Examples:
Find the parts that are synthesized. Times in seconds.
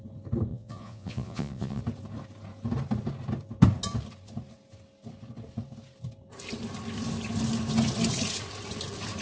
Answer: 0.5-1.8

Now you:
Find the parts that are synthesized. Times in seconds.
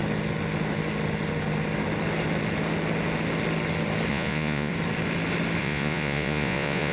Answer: 4.1-4.7; 5.6-6.9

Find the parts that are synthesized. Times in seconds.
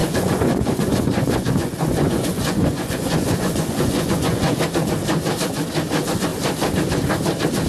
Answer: 0.0-4.6